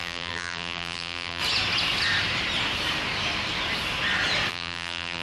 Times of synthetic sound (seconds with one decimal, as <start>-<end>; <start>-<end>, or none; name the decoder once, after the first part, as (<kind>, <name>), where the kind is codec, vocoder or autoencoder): 0.0-1.4 (vocoder, BigVGAN v2); 4.5-5.2